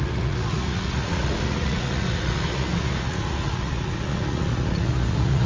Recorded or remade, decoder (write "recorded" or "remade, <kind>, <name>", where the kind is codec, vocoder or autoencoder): remade, vocoder, Vocos